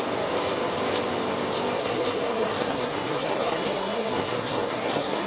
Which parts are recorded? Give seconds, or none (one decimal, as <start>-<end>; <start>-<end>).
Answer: 0.0-1.8